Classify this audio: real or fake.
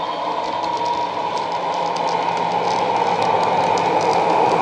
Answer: real